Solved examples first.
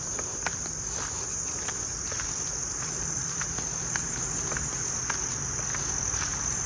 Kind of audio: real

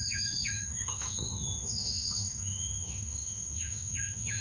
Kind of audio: fake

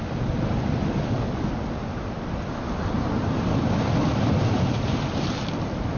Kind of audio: real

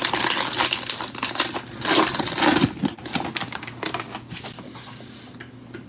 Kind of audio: real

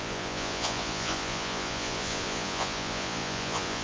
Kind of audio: fake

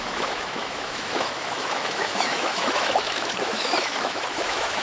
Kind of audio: fake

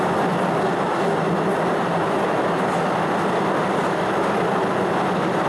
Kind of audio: real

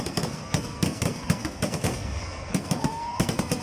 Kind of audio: fake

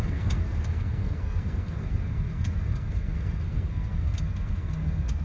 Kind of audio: fake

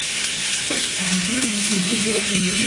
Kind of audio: fake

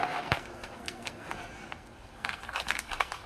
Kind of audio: fake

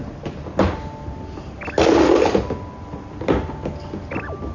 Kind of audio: real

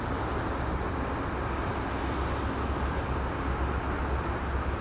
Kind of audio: real